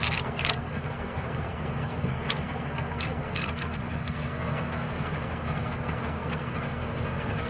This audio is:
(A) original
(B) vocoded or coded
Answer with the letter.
B